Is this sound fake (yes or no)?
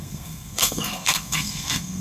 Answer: yes